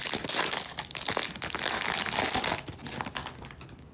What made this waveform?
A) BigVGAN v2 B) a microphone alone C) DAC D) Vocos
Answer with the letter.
B